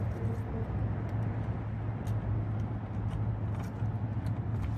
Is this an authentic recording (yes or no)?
yes